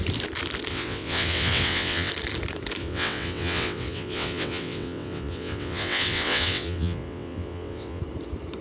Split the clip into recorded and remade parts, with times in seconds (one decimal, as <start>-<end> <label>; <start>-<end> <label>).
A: 0.0-0.7 recorded; 0.7-2.1 remade; 2.1-2.8 recorded; 2.8-8.0 remade; 8.0-8.6 recorded